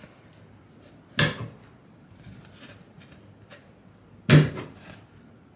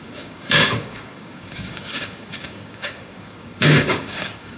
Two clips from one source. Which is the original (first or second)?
first